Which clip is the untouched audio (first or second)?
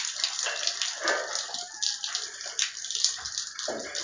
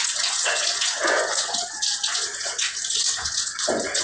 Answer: first